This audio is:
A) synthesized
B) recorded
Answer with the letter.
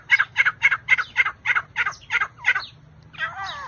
B